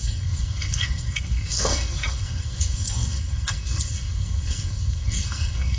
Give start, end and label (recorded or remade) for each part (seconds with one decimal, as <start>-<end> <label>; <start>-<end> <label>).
0.0-5.8 remade